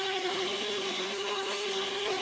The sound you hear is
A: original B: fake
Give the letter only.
B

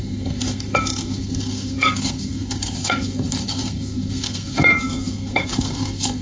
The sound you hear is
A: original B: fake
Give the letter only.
B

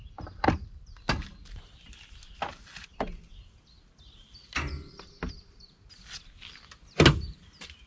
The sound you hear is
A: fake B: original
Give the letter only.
B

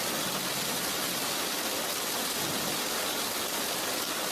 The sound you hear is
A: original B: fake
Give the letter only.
A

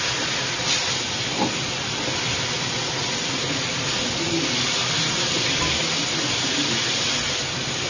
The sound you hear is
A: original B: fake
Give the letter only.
A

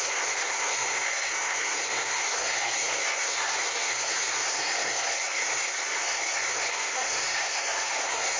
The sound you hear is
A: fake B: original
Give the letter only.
A